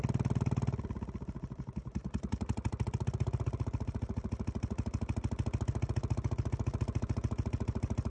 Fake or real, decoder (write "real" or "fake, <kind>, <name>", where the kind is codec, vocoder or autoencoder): real